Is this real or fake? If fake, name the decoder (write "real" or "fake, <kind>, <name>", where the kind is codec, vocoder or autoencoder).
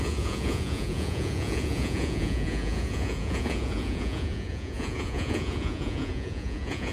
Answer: fake, vocoder, Vocos